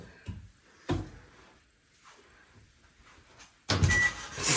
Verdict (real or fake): real